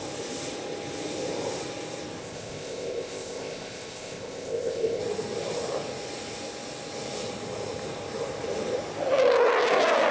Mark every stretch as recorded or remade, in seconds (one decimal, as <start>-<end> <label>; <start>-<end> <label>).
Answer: 0.0-2.2 recorded; 2.2-5.0 remade; 5.0-10.1 recorded

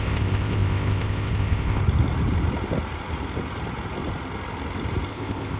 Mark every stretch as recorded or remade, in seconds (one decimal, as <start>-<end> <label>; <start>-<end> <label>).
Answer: 0.0-1.8 remade; 1.8-5.1 recorded; 5.1-5.6 remade

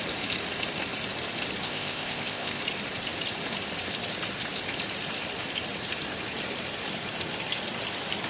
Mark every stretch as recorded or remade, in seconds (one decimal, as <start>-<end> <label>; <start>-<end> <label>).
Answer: 0.0-1.6 recorded; 1.6-2.6 remade; 2.6-8.3 recorded

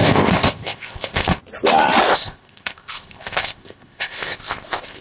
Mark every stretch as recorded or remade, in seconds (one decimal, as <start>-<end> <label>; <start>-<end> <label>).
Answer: 0.0-1.4 remade; 1.4-2.1 recorded; 2.1-5.0 remade

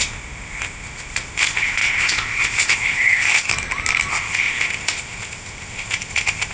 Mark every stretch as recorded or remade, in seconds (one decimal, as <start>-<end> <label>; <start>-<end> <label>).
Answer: 0.0-3.5 remade; 3.5-4.1 recorded; 4.1-6.5 remade

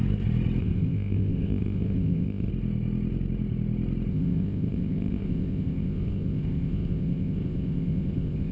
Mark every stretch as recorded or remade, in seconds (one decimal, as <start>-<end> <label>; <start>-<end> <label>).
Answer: 0.0-0.6 recorded; 0.6-2.5 remade; 2.5-4.1 recorded; 4.1-8.5 remade

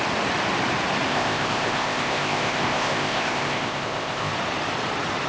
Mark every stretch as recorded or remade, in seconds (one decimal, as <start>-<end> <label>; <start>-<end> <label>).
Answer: 0.0-1.1 recorded; 1.1-4.3 remade; 4.3-5.3 recorded

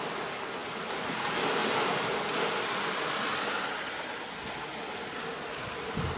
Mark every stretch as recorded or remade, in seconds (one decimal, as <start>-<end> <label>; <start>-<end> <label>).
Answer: 0.0-6.2 recorded